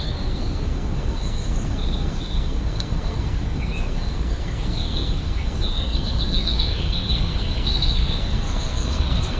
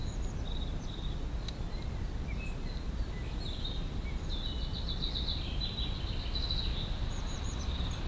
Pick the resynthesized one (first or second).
first